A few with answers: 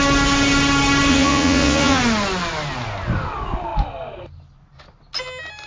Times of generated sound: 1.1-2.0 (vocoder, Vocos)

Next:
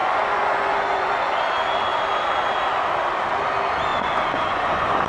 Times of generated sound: 0.0-1.4 (vocoder, Vocos); 3.9-5.1

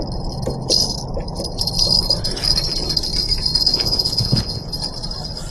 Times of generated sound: 3.7-4.7 (vocoder, Vocos)